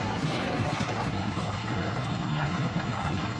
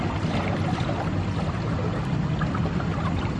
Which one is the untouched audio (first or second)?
second